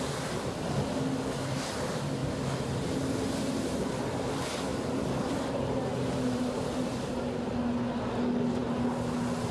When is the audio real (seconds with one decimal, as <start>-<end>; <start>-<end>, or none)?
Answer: 0.0-4.7; 7.5-9.5